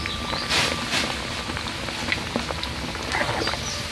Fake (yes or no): no